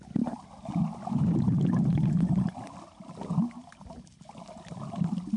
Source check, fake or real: real